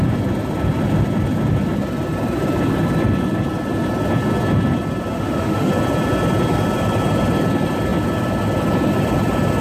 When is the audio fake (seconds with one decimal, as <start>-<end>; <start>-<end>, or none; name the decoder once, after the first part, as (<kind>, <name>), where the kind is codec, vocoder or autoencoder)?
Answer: 5.1-5.7 (autoencoder, DAC-VAE)